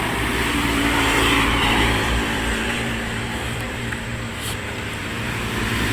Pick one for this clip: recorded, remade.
remade